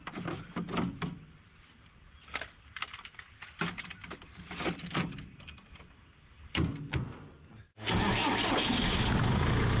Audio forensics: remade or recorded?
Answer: recorded